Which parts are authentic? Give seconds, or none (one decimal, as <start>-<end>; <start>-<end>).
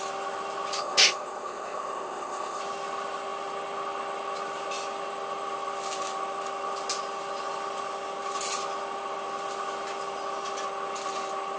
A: 0.0-0.8; 2.6-11.6